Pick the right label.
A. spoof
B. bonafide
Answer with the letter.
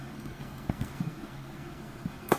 A